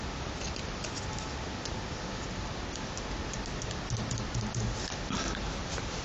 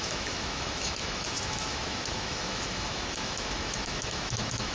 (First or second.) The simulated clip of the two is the second